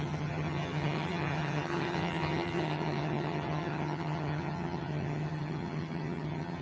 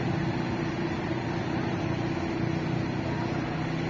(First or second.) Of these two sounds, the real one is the second